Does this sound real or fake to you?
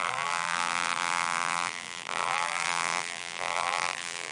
fake